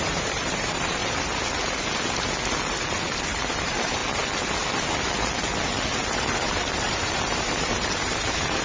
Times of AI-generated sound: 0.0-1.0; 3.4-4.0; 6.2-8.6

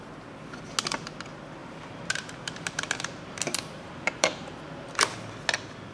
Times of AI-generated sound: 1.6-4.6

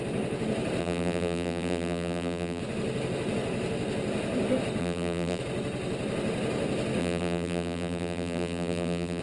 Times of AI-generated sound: 0.8-2.6; 4.8-5.4; 7.0-9.2

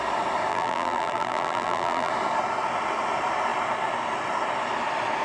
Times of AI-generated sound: 0.5-2.1